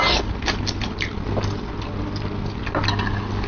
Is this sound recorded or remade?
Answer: recorded